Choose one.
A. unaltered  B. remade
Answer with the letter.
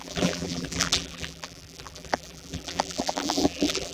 B